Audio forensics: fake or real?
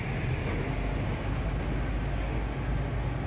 real